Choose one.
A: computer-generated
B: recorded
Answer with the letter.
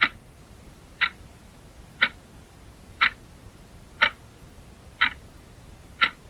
A